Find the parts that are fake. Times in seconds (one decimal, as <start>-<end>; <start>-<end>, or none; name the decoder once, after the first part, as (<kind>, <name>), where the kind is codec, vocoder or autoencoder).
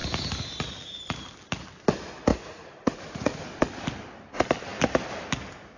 2.3-3.4 (vocoder, Vocos)